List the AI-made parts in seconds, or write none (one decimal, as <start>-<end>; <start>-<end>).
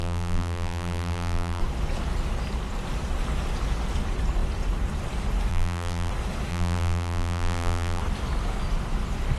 0.0-1.6; 5.5-6.1; 6.5-8.0